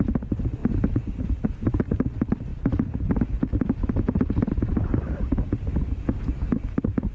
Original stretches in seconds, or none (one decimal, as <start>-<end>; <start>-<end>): 0.0-7.1

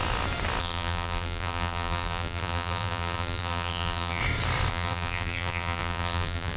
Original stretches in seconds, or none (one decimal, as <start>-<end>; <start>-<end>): 0.0-0.6; 4.2-4.7

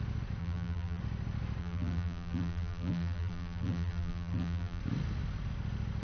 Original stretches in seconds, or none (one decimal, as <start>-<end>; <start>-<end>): 0.0-0.4; 1.0-1.6; 4.8-6.0